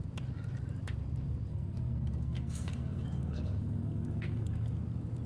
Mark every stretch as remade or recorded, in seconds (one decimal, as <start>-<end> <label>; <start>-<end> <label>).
0.0-1.5 recorded; 1.5-4.7 remade; 4.7-5.3 recorded